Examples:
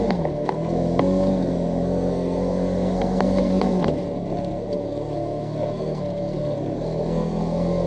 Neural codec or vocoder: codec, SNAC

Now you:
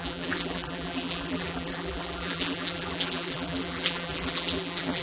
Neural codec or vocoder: vocoder, BigVGAN v2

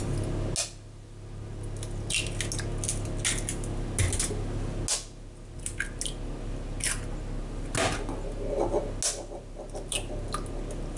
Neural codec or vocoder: none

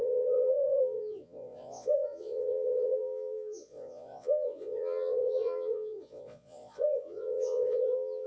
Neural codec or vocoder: vocoder, Vocos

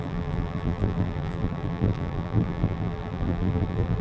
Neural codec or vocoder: vocoder, BigVGAN v2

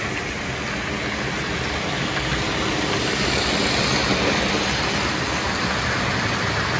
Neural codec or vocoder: none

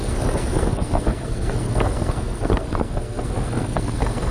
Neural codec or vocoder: codec, SNAC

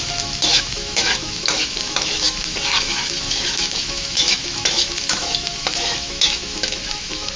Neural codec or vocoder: autoencoder, DAC-VAE